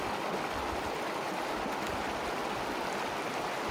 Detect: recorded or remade recorded